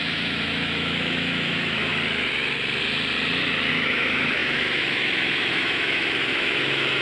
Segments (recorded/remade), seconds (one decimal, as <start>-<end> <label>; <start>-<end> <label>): 0.0-1.9 remade; 1.9-3.7 recorded; 3.7-7.0 remade